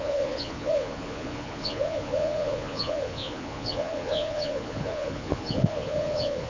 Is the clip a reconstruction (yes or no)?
yes